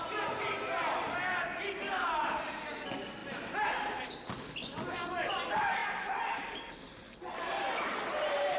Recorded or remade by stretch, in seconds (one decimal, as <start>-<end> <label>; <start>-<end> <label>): 0.0-5.8 recorded; 5.8-6.4 remade; 6.4-8.6 recorded